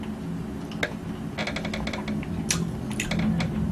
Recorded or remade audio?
recorded